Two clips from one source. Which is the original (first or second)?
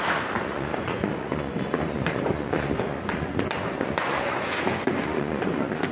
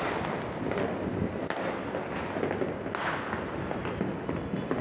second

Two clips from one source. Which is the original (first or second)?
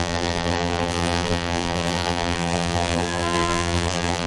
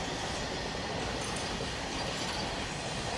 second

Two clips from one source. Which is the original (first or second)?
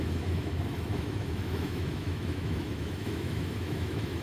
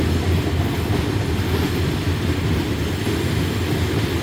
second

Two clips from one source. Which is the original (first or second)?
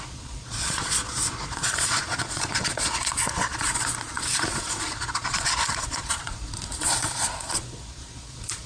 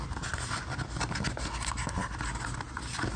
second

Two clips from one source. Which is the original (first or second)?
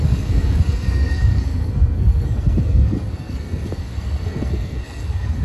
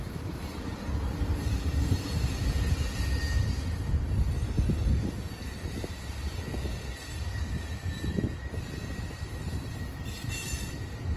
second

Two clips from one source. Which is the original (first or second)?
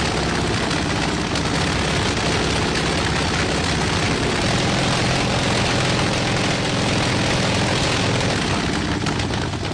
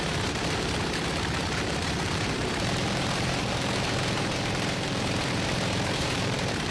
first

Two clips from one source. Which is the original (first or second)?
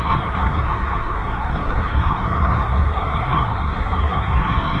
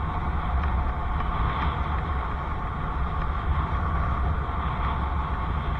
second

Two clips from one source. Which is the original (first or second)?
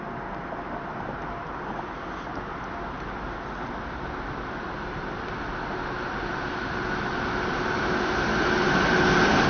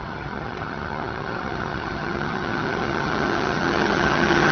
first